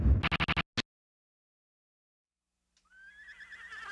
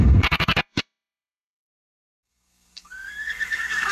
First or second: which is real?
first